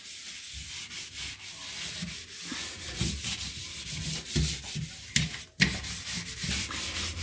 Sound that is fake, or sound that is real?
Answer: real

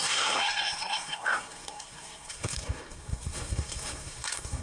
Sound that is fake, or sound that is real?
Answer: fake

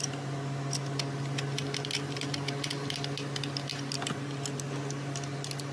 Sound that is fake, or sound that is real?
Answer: real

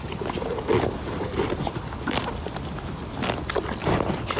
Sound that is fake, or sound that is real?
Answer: real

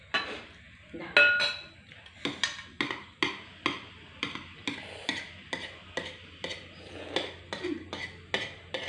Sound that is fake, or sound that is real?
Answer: real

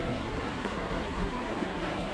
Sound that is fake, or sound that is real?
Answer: fake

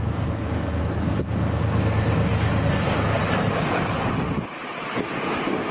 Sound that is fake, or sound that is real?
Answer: real